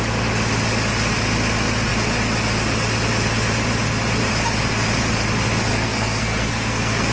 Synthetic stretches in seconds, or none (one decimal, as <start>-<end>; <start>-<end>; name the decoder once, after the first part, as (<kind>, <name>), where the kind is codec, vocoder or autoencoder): 5.7-7.1 (codec, SNAC)